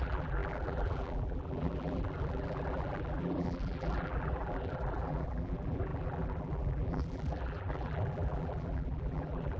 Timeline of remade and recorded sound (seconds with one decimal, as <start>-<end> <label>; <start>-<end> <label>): 0.0-9.6 remade